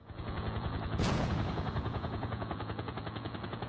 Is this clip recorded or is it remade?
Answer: remade